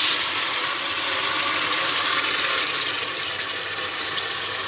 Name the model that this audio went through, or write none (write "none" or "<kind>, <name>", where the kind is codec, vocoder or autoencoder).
none